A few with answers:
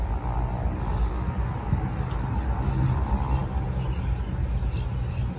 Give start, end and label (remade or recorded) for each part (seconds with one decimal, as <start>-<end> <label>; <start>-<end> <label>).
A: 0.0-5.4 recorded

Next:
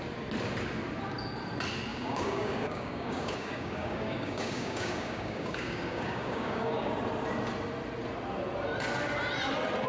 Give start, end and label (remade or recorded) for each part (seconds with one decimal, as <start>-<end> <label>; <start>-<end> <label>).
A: 0.0-1.9 recorded; 1.9-6.9 remade; 6.9-9.9 recorded

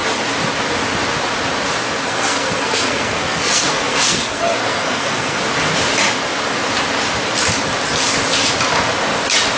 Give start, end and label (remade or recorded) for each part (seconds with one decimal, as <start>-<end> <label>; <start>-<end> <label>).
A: 0.0-2.0 recorded; 2.0-5.4 remade; 5.4-9.6 recorded

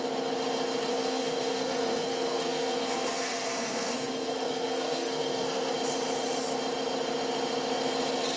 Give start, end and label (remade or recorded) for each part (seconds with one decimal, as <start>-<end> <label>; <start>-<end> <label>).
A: 0.0-0.9 recorded; 0.9-5.7 remade; 5.7-8.4 recorded